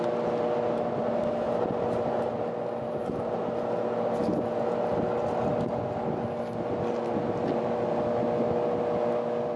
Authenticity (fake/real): real